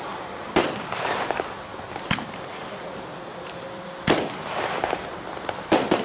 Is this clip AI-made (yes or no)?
no